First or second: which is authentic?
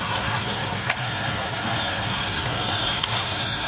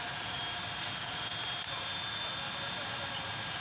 second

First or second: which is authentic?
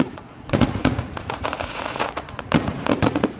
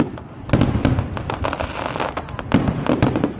second